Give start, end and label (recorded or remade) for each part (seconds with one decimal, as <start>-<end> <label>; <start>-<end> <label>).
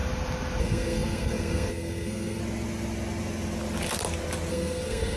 0.0-0.6 recorded; 0.6-2.4 remade; 2.4-4.5 recorded; 4.5-5.2 remade